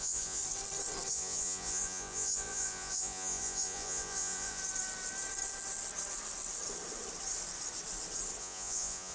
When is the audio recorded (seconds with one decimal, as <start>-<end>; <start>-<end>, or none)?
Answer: 0.4-1.1; 4.6-8.4